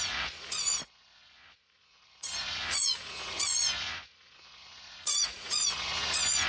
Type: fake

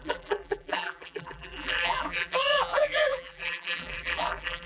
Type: fake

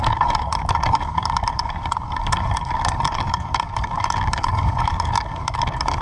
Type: fake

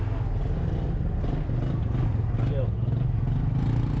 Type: real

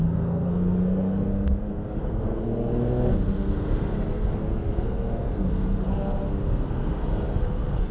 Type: fake